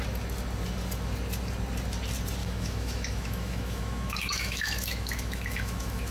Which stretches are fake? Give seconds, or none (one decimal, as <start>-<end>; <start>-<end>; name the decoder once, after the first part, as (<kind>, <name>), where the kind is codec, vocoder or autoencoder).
2.4-6.1 (autoencoder, DAC-VAE)